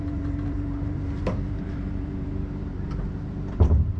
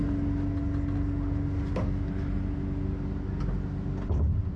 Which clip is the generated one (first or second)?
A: first